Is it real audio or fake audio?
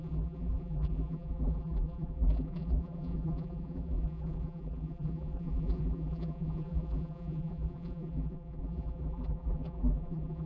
fake